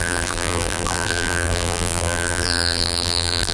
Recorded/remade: remade